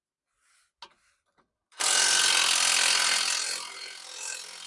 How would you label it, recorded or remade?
recorded